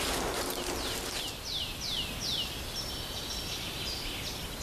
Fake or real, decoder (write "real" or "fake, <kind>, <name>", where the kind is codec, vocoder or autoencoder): real